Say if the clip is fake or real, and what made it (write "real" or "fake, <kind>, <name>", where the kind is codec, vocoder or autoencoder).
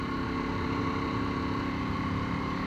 fake, vocoder, BigVGAN v2